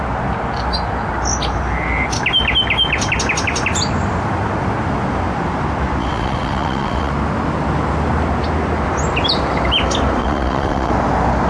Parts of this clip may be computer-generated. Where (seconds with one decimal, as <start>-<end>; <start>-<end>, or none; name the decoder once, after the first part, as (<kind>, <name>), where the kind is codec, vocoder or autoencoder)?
6.0-7.1 (vocoder, WaveNeXt); 10.2-10.9